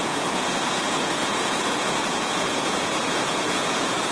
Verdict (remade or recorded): remade